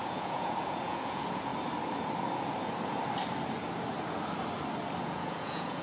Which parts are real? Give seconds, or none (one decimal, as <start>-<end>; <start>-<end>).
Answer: 1.5-5.0